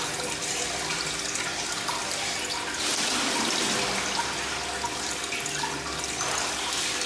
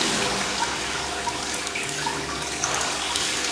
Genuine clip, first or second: first